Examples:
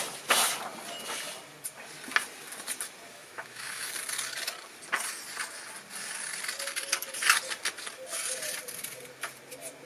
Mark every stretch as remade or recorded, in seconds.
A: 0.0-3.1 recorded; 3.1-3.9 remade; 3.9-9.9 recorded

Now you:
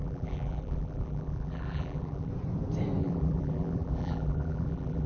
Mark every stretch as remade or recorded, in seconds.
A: 0.0-2.3 remade; 2.3-3.0 recorded; 3.0-5.1 remade

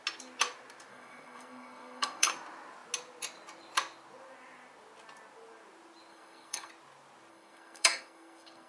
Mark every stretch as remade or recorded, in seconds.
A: 0.0-0.9 recorded; 0.9-2.3 remade; 2.3-6.1 recorded; 6.1-6.7 remade; 6.7-7.3 recorded; 7.3-8.7 remade

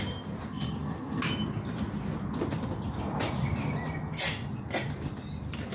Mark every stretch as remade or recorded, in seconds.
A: 0.0-0.5 recorded; 0.5-1.2 remade; 1.2-5.7 recorded

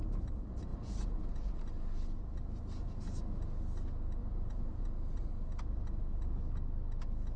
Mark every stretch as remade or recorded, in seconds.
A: 0.0-0.7 recorded; 0.7-1.6 remade; 1.6-4.2 recorded; 4.2-4.9 remade; 4.9-7.4 recorded

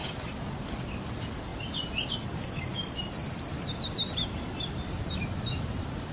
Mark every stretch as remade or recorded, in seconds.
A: 0.0-2.7 recorded; 2.7-5.1 remade; 5.1-6.1 recorded